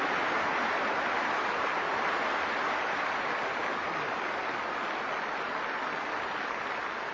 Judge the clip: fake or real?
real